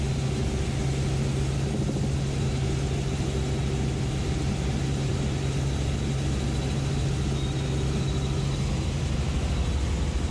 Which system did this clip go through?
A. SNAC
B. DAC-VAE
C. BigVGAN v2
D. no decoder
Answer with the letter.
D